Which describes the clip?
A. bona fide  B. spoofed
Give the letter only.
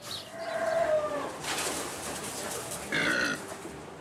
A